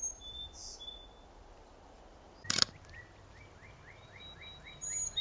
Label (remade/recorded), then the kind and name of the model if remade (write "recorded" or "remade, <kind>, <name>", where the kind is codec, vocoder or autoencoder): recorded